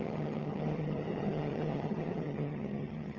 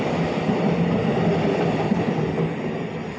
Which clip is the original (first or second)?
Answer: second